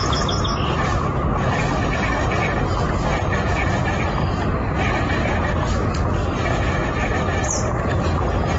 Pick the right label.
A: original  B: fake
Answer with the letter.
A